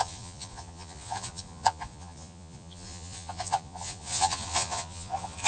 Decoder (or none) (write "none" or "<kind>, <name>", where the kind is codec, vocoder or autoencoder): vocoder, Vocos